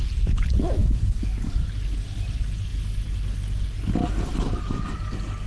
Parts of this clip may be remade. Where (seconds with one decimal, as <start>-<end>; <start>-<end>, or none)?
0.8-1.5